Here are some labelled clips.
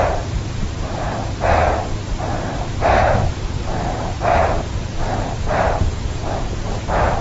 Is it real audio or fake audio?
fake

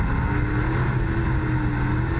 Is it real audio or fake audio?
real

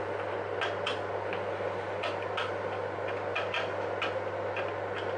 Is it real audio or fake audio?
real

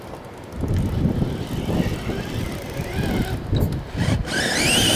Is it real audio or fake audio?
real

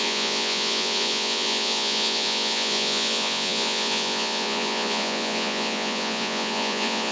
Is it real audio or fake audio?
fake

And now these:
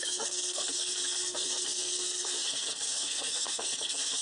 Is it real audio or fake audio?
fake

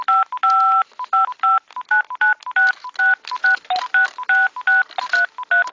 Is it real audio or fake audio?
real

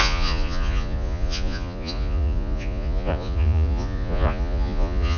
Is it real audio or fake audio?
fake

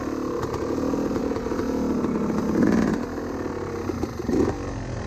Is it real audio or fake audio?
real